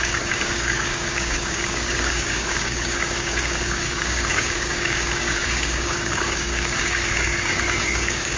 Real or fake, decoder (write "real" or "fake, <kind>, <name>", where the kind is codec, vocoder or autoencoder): fake, codec, DAC